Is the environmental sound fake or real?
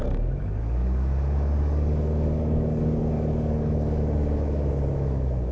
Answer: fake